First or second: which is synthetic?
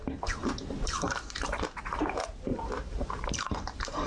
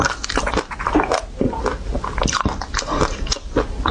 first